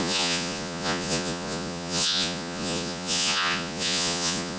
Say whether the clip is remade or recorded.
remade